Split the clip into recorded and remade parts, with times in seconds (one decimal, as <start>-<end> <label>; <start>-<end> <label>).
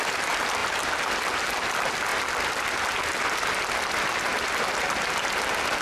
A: 0.0-0.6 recorded; 0.6-1.1 remade; 1.1-5.8 recorded